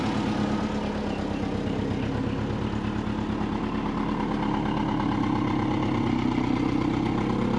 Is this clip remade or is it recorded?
recorded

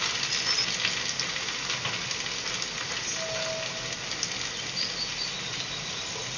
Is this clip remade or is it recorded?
recorded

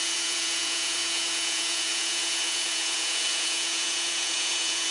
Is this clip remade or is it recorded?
remade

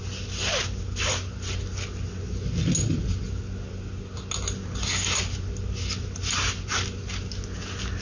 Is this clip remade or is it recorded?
recorded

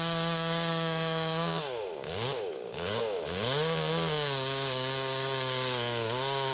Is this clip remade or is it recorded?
remade